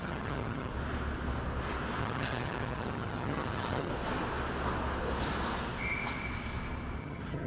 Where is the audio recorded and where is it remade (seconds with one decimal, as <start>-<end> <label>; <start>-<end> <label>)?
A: 0.0-0.7 remade; 0.7-2.0 recorded; 2.0-3.9 remade; 3.9-7.0 recorded; 7.0-7.5 remade